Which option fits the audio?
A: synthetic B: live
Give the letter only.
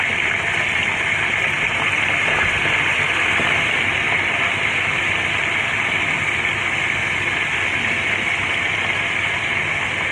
B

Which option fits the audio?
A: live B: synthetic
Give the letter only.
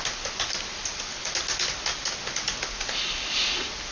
A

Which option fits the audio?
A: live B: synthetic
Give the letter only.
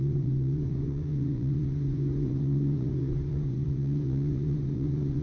B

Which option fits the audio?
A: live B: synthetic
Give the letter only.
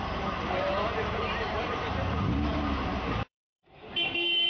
B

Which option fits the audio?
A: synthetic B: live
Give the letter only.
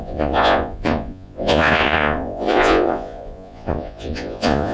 A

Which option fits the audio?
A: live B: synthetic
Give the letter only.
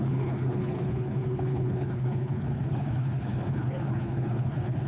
B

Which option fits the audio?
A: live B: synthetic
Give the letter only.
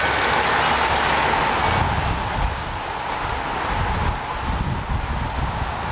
A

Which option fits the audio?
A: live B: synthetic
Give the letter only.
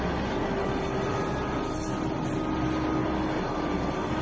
A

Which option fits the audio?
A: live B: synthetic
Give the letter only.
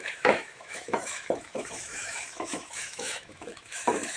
B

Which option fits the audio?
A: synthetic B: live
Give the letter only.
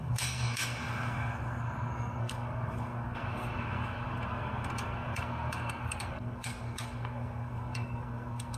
A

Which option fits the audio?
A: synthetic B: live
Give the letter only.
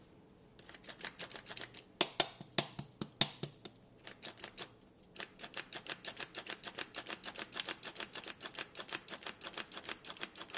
B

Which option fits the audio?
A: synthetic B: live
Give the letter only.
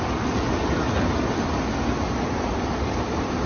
B